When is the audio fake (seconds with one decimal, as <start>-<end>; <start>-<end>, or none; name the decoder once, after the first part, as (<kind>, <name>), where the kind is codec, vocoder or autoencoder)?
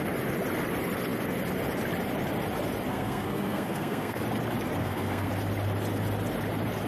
2.9-4.2 (codec, SNAC); 4.8-5.3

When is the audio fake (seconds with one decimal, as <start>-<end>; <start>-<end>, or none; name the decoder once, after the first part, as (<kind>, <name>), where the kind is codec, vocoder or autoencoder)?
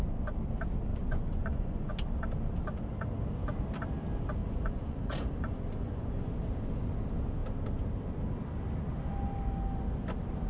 0.9-1.9 (vocoder, Vocos); 4.4-6.3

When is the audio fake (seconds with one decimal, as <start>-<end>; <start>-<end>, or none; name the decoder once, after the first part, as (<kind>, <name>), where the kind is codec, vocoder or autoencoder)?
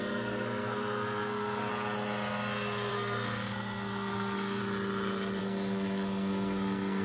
0.0-1.7 (codec, SNAC); 2.9-4.6; 5.4-7.0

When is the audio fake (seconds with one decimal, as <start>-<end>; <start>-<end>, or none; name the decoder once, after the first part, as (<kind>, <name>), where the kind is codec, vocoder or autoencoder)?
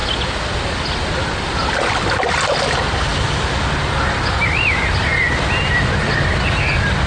none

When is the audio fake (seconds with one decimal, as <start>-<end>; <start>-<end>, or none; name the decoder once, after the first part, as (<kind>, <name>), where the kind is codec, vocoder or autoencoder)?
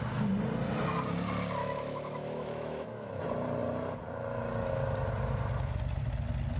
1.6-3.2 (autoencoder, DAC-VAE)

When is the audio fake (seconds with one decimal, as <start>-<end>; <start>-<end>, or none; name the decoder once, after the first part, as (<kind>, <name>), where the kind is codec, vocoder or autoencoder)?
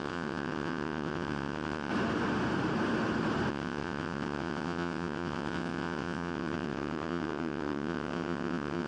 0.0-1.9 (vocoder, WaveNeXt); 3.5-8.9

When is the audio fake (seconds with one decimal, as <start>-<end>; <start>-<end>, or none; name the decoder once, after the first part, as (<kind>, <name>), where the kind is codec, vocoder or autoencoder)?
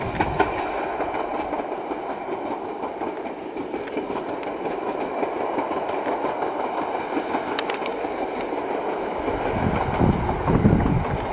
1.3-5.4 (vocoder, BigVGAN v2); 7.9-10.1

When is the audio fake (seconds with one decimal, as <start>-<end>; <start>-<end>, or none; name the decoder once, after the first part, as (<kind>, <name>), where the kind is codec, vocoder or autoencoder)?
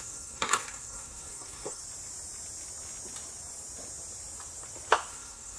0.0-1.8 (codec, SNAC); 5.1-5.6